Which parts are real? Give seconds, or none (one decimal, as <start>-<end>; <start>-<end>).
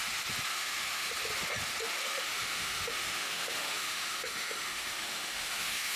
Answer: 0.0-0.5; 1.1-2.1